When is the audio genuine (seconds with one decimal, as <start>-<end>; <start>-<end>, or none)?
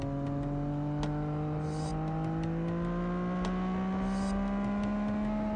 0.0-5.6